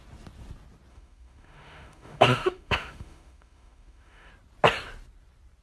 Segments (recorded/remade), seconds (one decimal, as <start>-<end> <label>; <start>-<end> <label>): 0.0-0.9 recorded; 0.9-4.3 remade; 4.3-5.6 recorded